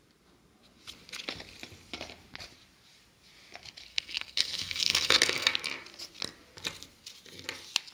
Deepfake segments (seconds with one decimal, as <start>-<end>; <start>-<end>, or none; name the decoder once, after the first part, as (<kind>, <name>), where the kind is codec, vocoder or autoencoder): 3.9-5.5 (codec, SNAC)

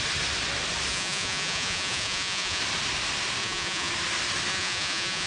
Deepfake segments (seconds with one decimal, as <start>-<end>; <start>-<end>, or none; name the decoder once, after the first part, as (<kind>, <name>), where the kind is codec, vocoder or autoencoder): 0.9-2.6 (vocoder, Vocos); 3.4-3.9; 4.5-5.3

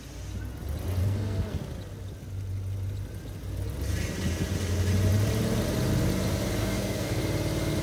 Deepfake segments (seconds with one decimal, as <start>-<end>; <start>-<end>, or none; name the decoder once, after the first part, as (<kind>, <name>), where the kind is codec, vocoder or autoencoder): 1.0-1.6 (codec, SNAC); 6.6-7.2

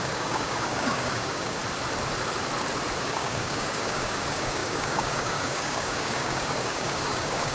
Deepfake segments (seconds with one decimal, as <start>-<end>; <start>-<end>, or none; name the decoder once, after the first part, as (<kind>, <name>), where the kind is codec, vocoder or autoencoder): 0.0-1.6 (codec, DAC); 3.0-7.5

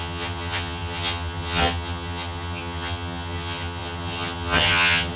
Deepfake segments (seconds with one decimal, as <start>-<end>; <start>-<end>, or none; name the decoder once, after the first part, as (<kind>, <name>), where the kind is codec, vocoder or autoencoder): 0.0-5.2 (vocoder, HiFi-GAN)

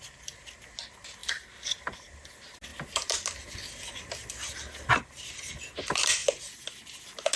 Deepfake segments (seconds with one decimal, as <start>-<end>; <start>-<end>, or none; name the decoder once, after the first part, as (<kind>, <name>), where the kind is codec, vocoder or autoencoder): none

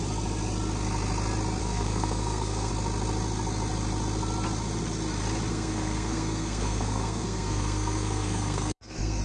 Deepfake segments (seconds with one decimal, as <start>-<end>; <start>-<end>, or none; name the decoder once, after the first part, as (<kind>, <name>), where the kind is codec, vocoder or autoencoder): 1.6-2.7 (codec, SNAC); 5.5-9.2

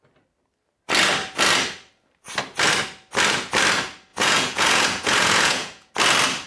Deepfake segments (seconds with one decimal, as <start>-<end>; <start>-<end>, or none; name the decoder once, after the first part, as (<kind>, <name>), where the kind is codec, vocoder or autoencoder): 4.1-5.9 (vocoder, Vocos)